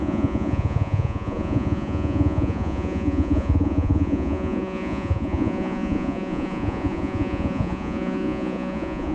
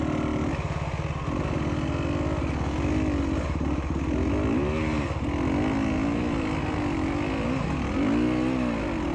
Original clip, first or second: second